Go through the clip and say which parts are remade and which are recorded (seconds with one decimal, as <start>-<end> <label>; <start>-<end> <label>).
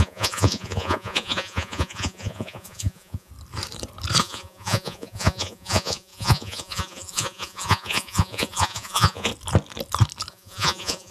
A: 0.0-3.3 remade; 3.3-4.2 recorded; 4.2-9.3 remade; 9.3-10.3 recorded; 10.3-11.1 remade